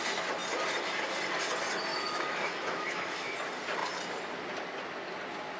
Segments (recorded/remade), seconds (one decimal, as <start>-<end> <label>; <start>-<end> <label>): 0.0-1.9 recorded; 1.9-3.3 remade; 3.3-5.6 recorded